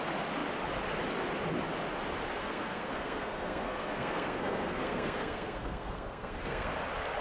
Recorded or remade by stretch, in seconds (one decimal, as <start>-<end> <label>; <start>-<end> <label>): 0.0-2.4 recorded; 2.4-6.7 remade; 6.7-7.2 recorded